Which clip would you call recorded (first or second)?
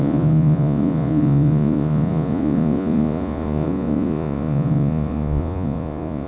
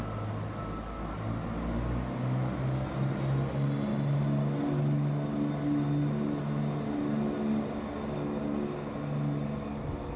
second